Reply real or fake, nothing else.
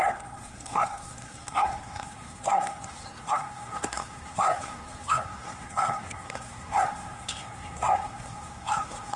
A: fake